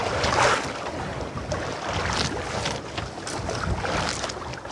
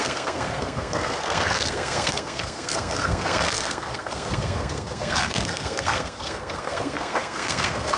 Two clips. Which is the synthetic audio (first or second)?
second